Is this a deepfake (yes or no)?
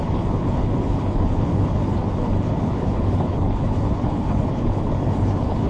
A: yes